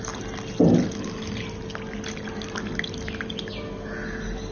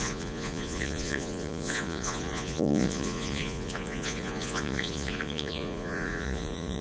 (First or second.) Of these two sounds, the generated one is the second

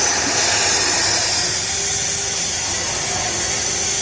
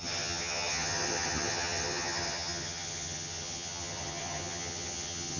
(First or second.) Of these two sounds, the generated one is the second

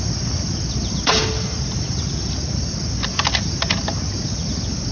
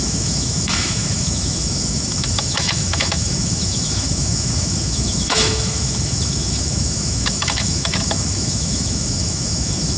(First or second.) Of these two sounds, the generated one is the second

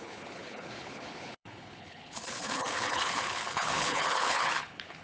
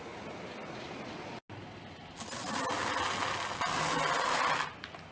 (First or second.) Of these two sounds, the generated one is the first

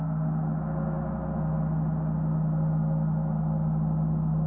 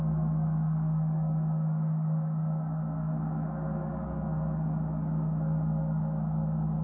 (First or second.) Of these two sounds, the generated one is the second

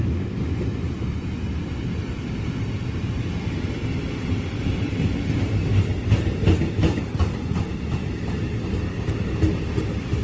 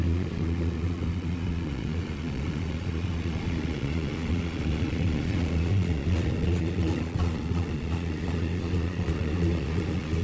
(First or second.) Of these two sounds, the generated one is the second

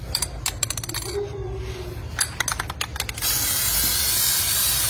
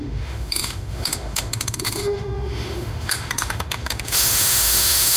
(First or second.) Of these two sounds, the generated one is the second